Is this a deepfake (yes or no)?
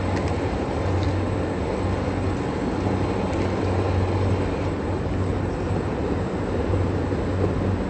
no